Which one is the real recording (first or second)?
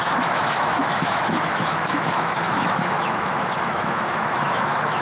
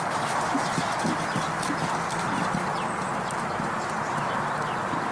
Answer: second